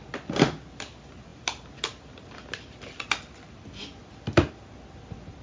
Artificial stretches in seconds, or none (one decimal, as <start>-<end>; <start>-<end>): none